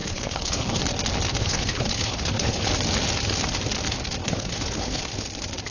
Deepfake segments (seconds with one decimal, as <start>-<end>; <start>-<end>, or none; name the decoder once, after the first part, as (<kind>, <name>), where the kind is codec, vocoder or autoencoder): 0.0-0.8 (codec, HILCodec); 1.4-2.7; 4.2-5.0